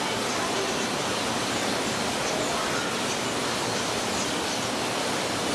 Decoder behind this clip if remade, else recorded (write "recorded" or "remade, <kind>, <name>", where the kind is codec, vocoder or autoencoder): recorded